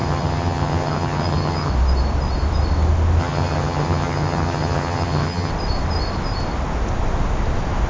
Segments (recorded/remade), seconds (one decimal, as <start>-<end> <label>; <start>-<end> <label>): 0.0-1.7 remade; 1.7-3.2 recorded; 3.2-5.5 remade; 5.5-7.9 recorded